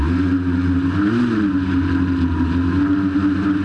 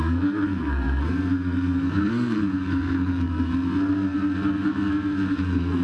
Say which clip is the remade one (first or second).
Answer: second